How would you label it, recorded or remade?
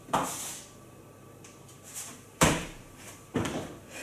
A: remade